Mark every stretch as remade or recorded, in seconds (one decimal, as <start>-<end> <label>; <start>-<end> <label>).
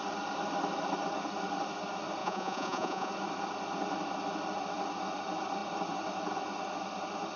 0.0-2.2 recorded; 2.2-3.1 remade; 3.1-7.4 recorded